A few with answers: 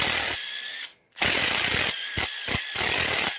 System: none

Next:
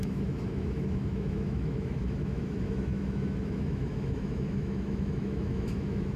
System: autoencoder, DAC-VAE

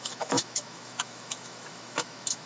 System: autoencoder, DAC-VAE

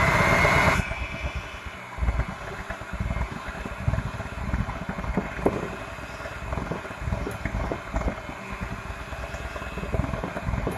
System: none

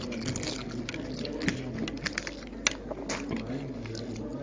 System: none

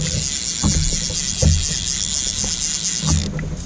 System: none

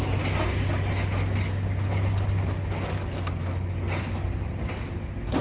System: none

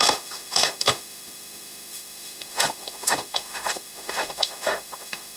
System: autoencoder, DAC-VAE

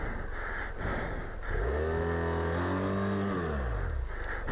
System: none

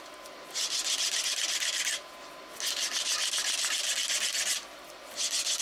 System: none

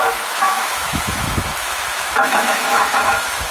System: autoencoder, DAC-VAE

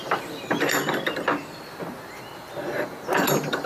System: none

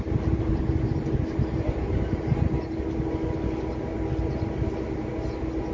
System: none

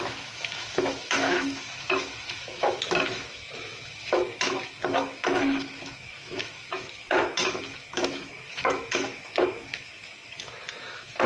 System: autoencoder, DAC-VAE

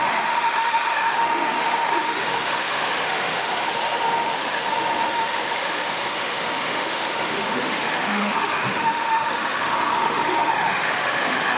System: autoencoder, DAC-VAE